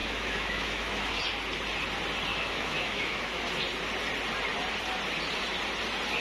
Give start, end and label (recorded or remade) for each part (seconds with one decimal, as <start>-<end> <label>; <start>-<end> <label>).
0.0-1.2 remade; 1.2-2.3 recorded; 2.3-3.4 remade; 3.4-6.2 recorded